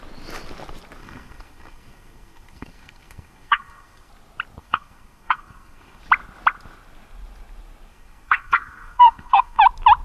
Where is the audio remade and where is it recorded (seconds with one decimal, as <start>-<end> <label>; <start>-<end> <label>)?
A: 0.0-1.0 recorded; 1.0-4.1 remade; 4.1-4.6 recorded; 4.6-6.0 remade; 6.0-7.9 recorded; 7.9-9.6 remade; 9.6-10.0 recorded